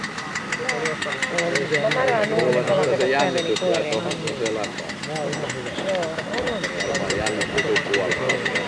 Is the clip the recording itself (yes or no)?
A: yes